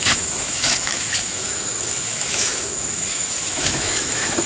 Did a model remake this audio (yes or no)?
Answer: yes